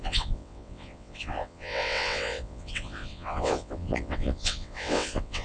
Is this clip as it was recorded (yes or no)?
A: no